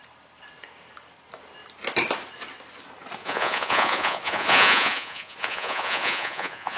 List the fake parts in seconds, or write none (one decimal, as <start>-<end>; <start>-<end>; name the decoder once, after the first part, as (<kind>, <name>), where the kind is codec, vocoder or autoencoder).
3.2-6.8 (vocoder, Vocos)